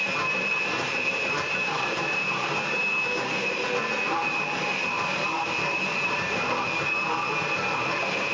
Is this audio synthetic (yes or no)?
yes